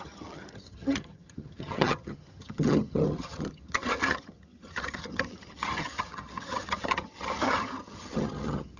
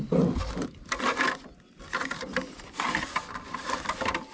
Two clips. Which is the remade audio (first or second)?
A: first